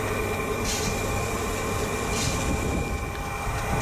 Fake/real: real